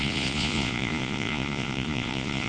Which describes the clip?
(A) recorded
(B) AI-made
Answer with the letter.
B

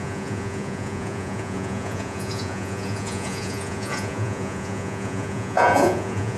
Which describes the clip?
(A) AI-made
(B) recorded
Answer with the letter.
A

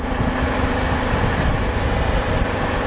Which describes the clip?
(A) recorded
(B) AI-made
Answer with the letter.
A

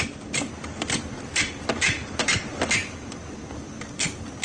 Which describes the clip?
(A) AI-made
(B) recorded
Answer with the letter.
B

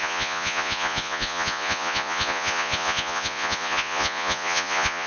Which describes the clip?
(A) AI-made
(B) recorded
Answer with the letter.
A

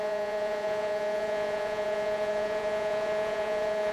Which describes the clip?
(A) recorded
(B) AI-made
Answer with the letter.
B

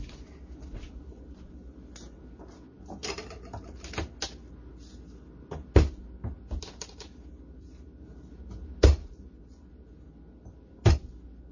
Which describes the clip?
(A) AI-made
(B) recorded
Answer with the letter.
B